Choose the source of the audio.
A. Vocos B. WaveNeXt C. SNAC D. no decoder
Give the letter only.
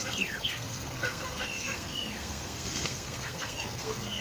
C